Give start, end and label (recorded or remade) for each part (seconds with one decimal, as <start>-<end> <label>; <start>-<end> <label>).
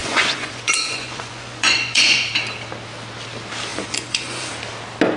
0.0-2.2 remade; 2.2-3.7 recorded; 3.7-4.5 remade; 4.5-5.2 recorded